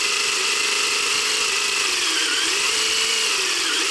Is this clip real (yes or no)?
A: no